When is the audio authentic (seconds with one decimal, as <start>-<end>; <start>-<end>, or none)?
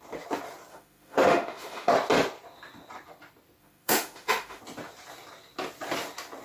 0.0-0.7; 1.9-3.6; 4.6-6.4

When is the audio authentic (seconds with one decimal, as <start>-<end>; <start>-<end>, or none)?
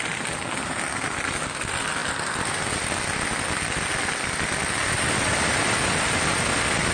0.0-6.9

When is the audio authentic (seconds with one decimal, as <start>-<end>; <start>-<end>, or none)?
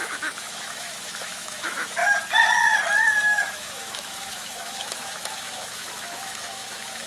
2.0-3.2